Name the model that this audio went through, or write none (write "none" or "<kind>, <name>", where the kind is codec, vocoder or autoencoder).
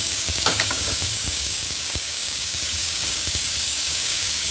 codec, DAC